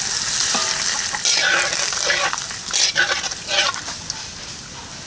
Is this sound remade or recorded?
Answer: recorded